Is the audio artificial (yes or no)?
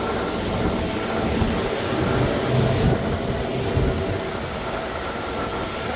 no